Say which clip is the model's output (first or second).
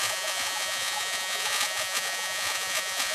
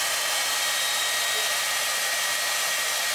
first